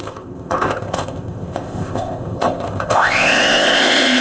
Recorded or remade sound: remade